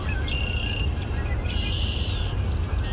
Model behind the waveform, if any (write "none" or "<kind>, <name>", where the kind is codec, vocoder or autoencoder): none